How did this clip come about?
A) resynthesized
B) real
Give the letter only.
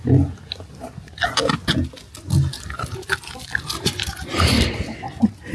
B